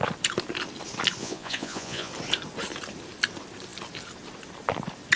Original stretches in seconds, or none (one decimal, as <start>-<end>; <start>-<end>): 0.0-1.2; 2.1-5.2